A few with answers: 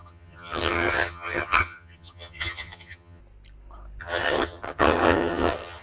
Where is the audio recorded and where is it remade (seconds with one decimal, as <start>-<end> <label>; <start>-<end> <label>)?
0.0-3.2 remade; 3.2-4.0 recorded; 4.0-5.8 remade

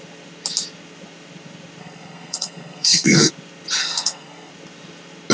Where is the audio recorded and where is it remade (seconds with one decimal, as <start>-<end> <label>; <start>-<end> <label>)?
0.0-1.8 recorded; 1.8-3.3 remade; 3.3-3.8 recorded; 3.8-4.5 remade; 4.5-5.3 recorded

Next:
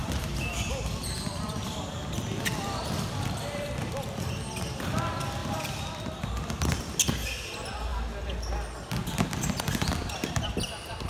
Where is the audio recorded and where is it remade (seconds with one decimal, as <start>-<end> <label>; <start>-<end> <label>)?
0.0-4.2 remade; 4.2-5.4 recorded; 5.4-6.8 remade; 6.8-11.1 recorded

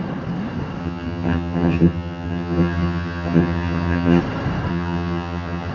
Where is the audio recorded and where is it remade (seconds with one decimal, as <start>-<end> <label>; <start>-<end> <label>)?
0.0-0.8 recorded; 0.8-4.2 remade; 4.2-4.7 recorded; 4.7-5.7 remade

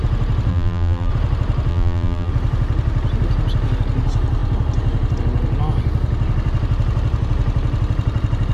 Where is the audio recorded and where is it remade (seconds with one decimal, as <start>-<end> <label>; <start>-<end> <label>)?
0.0-0.5 recorded; 0.5-1.1 remade; 1.1-1.7 recorded; 1.7-2.3 remade; 2.3-8.5 recorded

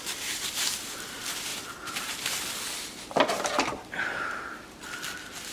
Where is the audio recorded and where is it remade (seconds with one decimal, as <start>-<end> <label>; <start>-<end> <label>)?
0.0-5.5 remade

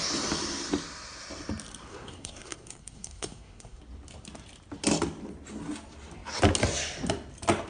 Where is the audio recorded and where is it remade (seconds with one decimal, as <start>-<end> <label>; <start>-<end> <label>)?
0.0-1.9 recorded; 1.9-3.8 remade; 3.8-7.7 recorded

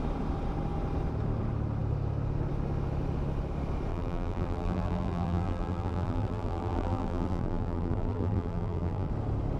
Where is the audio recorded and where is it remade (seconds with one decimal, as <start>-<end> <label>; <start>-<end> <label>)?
0.0-3.9 recorded; 3.9-9.1 remade; 9.1-9.6 recorded